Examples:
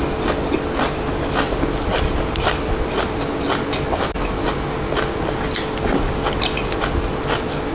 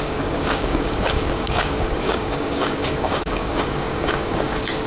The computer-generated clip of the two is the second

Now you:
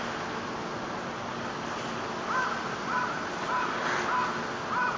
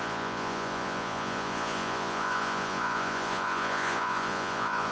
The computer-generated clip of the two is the second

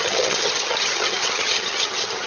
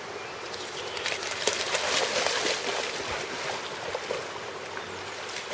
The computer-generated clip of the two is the first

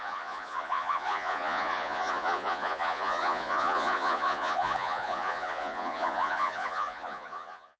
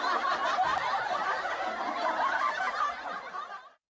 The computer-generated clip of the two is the first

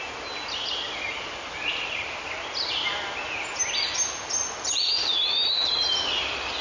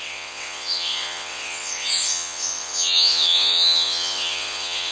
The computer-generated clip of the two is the second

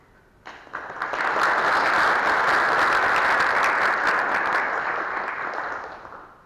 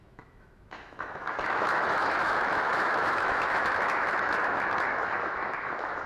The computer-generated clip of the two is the second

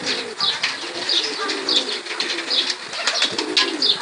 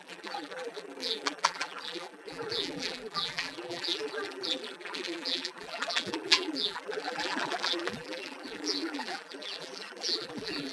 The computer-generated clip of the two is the second